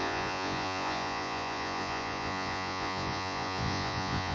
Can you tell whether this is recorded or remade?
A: remade